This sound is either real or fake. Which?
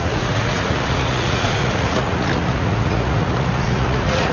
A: fake